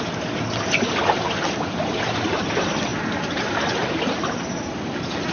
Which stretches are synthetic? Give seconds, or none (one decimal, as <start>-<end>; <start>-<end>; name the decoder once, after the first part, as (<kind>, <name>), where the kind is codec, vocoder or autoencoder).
none

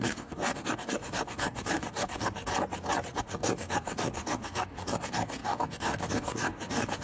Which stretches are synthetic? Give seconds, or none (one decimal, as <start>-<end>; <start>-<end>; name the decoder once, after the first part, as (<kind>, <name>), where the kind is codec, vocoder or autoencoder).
0.0-2.5 (codec, DAC); 3.2-7.0

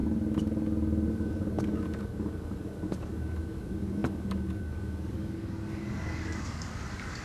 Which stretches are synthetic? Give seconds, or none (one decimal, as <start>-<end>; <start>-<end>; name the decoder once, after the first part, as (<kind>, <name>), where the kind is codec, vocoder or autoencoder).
1.1-7.2 (codec, DAC)

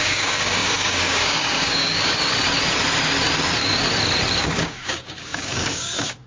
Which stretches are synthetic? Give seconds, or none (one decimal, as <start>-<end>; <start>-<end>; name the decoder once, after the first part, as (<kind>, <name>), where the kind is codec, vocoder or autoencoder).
0.0-2.2 (codec, DAC); 4.4-6.3

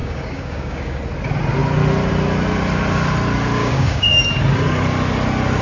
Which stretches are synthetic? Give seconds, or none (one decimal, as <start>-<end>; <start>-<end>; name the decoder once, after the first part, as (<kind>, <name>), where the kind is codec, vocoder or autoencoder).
0.0-1.0 (codec, DAC); 3.6-4.4